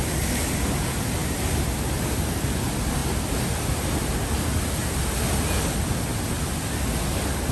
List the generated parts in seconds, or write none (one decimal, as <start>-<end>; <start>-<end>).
none